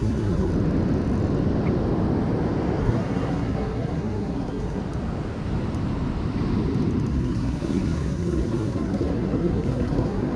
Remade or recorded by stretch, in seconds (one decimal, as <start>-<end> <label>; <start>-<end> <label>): 0.0-0.5 remade; 0.5-2.8 recorded; 2.8-4.8 remade; 4.8-7.1 recorded; 7.1-10.4 remade

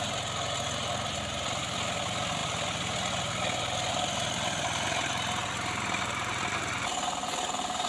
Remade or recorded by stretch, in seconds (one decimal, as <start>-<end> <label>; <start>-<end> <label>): 0.0-7.9 recorded

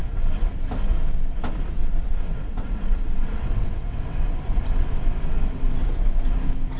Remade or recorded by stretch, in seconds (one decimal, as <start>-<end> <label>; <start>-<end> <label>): 0.0-0.5 remade; 0.5-1.8 recorded; 1.8-5.9 remade; 5.9-6.8 recorded

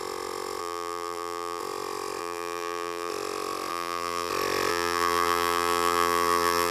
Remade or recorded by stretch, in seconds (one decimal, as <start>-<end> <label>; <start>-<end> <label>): 0.0-0.6 recorded; 0.6-1.6 remade; 1.6-2.2 recorded; 2.2-3.1 remade; 3.1-3.7 recorded; 3.7-4.3 remade; 4.3-4.7 recorded; 4.7-6.7 remade